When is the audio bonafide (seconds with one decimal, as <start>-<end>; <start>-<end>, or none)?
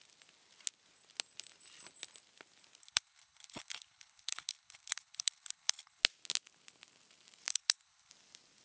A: 0.0-2.8; 6.0-7.5; 8.1-8.6